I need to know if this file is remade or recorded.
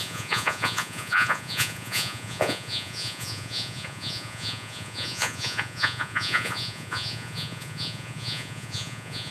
remade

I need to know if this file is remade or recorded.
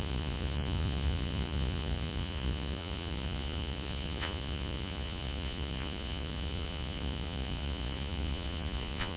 remade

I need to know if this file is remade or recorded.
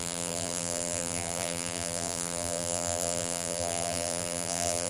remade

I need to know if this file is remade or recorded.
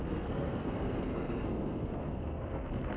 remade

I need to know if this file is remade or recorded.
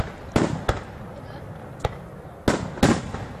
recorded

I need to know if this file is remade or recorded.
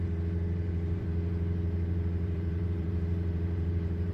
remade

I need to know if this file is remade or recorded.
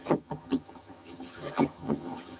remade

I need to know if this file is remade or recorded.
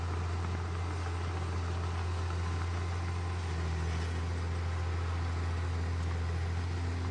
recorded